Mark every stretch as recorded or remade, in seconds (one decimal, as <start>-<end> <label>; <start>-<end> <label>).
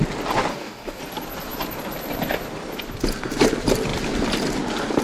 0.0-0.5 recorded; 0.5-1.0 remade; 1.0-5.0 recorded